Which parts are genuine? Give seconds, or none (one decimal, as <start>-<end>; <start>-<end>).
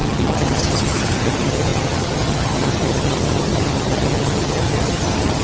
none